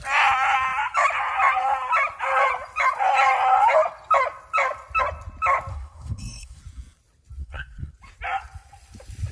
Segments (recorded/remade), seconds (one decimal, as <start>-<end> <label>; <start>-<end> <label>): 0.0-5.7 recorded; 5.7-6.6 remade; 6.6-7.4 recorded; 7.4-7.9 remade; 7.9-9.3 recorded